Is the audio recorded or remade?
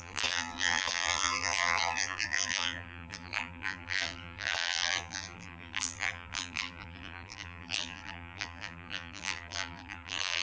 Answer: remade